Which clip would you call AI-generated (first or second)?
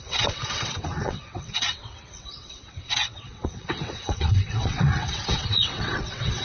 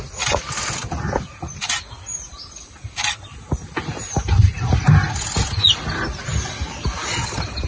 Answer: first